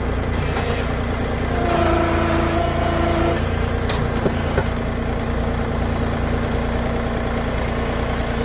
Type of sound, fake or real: real